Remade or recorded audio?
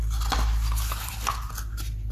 recorded